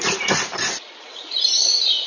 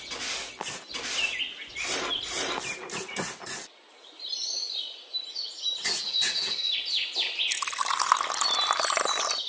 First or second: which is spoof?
first